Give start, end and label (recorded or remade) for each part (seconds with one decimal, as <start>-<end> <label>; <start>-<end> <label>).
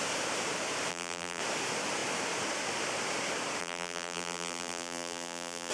0.0-0.9 recorded; 0.9-1.4 remade; 1.4-3.6 recorded; 3.6-5.7 remade